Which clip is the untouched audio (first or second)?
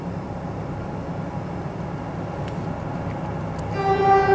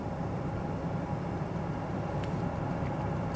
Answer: first